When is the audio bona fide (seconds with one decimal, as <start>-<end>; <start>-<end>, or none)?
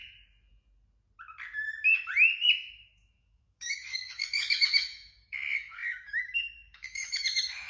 0.0-2.7